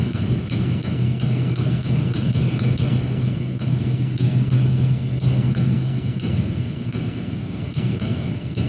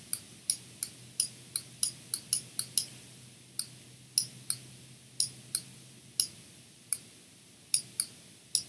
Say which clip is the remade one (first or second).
first